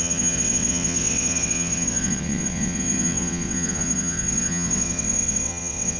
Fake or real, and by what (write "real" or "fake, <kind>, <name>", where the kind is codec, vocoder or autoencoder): fake, vocoder, WaveNeXt